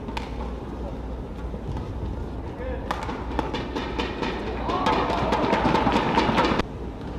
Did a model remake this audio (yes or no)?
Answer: no